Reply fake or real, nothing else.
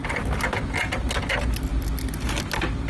real